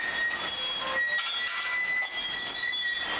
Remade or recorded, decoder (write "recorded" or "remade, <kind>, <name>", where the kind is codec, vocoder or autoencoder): recorded